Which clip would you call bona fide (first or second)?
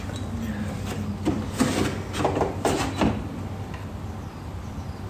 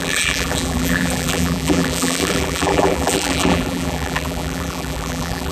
first